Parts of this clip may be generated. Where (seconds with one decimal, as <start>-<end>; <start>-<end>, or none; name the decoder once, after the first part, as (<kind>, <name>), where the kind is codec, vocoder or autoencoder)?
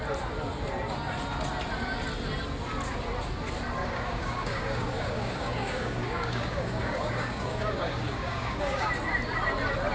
3.8-8.9 (codec, DAC)